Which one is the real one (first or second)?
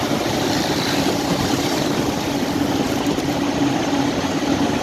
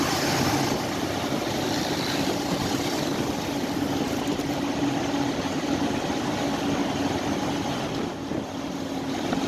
second